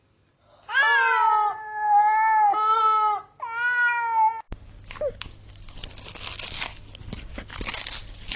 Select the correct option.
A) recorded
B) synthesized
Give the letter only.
A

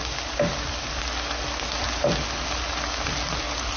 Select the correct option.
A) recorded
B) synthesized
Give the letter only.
A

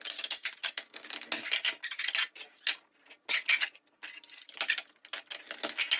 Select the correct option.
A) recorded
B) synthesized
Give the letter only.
A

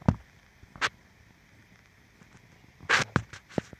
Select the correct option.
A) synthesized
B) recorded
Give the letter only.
B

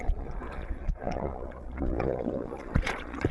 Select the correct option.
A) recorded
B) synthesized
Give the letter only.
B